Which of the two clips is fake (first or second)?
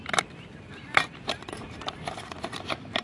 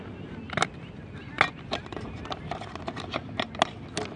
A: first